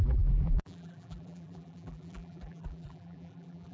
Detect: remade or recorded remade